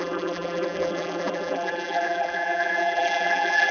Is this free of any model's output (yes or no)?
no